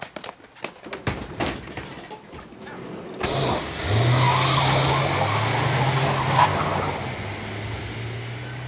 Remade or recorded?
recorded